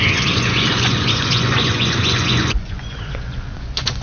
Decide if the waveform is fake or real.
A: fake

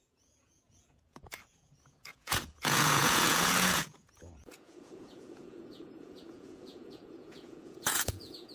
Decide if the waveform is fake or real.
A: fake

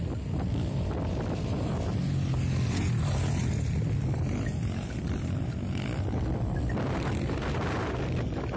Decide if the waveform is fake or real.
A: real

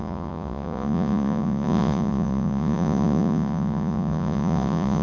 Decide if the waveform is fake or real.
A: fake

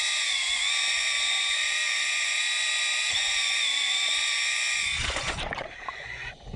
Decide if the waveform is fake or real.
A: fake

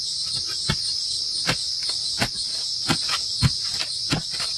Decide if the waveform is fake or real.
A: real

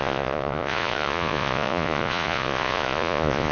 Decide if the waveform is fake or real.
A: fake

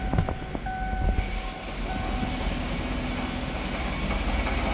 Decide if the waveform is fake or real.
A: real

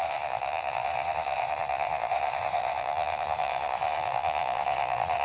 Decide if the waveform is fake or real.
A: fake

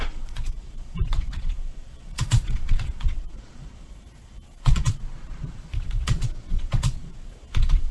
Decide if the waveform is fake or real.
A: fake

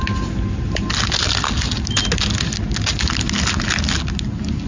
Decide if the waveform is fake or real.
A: real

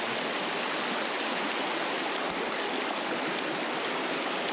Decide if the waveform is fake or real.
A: real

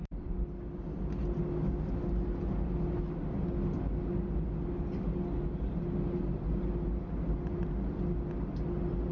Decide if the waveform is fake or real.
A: real